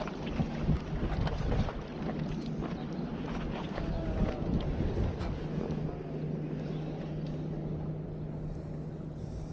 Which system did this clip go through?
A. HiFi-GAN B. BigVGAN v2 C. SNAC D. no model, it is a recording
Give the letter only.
D